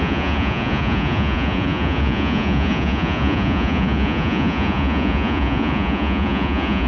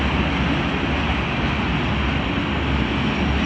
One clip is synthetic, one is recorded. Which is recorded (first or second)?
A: second